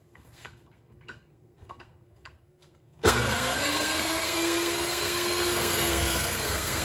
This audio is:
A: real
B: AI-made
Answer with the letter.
B